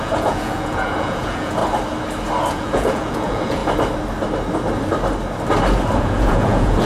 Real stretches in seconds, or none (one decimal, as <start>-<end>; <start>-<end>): 1.6-2.5; 3.6-6.0